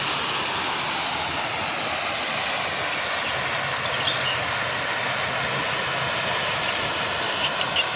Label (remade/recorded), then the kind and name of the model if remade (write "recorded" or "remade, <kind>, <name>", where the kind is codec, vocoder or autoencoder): recorded